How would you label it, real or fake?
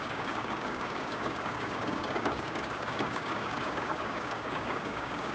fake